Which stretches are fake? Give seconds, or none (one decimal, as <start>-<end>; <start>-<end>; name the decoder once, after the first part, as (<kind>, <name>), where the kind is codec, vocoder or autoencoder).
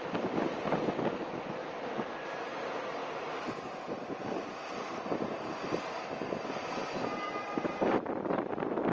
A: none